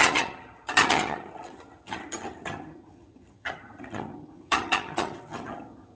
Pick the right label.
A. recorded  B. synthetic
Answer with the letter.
B